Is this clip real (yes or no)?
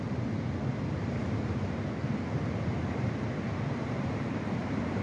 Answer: yes